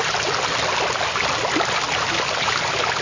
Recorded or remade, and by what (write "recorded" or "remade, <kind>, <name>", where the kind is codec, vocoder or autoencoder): recorded